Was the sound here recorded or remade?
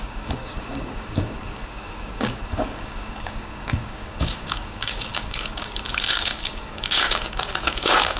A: remade